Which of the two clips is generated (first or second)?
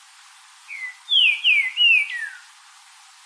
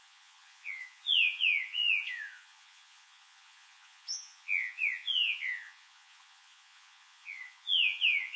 second